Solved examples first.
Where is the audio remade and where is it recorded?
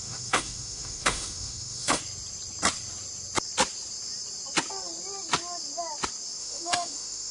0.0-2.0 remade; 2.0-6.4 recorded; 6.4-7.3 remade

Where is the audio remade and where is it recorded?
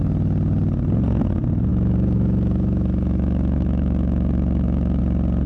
0.0-1.7 recorded; 1.7-5.0 remade; 5.0-5.5 recorded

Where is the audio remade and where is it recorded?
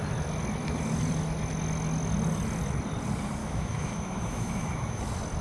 0.0-3.4 recorded; 3.4-5.0 remade; 5.0-5.4 recorded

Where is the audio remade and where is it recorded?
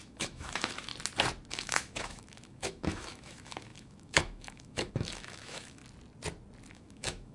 0.0-0.9 remade; 0.9-1.5 recorded; 1.5-5.8 remade; 5.8-6.7 recorded; 6.7-7.3 remade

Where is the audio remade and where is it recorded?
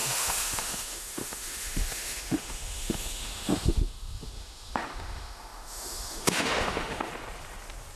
0.0-7.1 remade; 7.1-8.0 recorded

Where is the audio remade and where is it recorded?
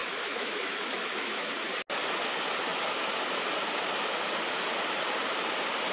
0.0-1.5 remade; 1.5-5.9 recorded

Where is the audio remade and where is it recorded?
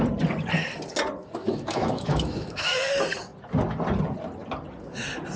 0.0-1.4 recorded; 1.4-2.9 remade; 2.9-5.4 recorded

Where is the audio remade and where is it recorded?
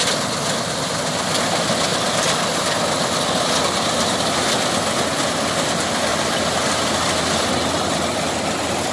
0.0-8.9 recorded